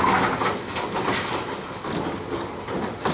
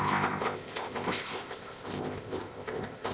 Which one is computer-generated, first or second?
second